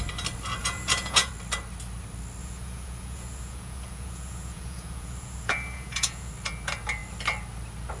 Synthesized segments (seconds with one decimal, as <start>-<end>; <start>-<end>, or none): 0.6-1.3; 2.4-6.3